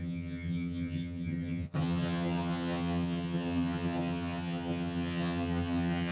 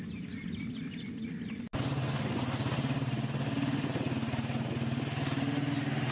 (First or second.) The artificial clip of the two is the first